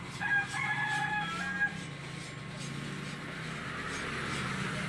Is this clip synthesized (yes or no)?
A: no